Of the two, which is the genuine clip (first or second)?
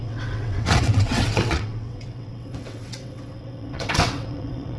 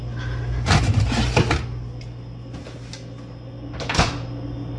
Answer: second